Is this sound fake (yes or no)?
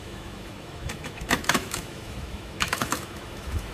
yes